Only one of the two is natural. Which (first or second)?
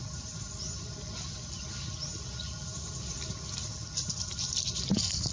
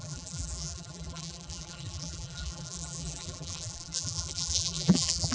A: first